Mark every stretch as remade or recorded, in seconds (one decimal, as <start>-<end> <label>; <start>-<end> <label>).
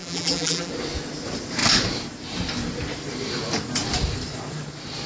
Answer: 0.0-0.7 remade; 0.7-5.1 recorded